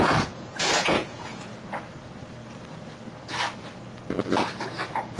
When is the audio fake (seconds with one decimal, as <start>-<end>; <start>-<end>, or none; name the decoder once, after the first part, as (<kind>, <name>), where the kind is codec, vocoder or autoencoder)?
0.0-1.5 (vocoder, Vocos); 4.6-5.2